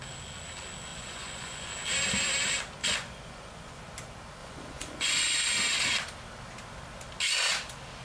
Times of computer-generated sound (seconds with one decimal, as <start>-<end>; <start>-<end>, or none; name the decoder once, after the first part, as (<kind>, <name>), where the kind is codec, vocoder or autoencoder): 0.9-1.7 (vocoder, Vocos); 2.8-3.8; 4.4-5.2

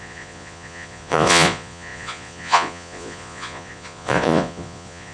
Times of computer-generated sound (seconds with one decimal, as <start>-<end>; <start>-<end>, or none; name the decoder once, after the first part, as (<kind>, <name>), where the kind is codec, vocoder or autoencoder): 0.0-5.1 (vocoder, Vocos)

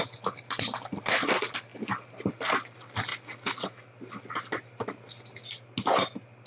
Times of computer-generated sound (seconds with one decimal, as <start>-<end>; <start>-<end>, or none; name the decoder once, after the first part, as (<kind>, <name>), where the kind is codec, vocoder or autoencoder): none

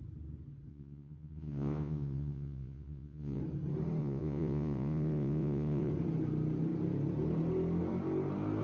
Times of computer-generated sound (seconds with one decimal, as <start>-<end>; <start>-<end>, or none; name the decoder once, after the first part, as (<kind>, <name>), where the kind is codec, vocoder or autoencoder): 0.7-3.4 (vocoder, Vocos); 4.0-5.9

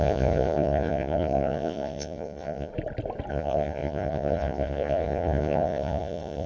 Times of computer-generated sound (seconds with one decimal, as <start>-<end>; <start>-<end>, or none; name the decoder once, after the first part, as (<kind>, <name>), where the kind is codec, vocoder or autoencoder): 0.0-2.7 (vocoder, Vocos); 3.3-6.5

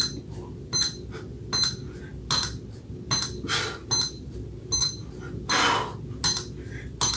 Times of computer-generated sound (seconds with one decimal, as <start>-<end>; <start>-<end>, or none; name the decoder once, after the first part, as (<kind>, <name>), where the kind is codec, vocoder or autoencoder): none